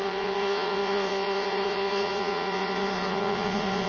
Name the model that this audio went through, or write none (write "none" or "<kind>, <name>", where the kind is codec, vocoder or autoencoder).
vocoder, Vocos